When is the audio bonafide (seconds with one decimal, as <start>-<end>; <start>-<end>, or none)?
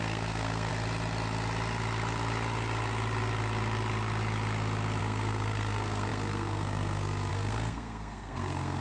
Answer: 0.7-5.0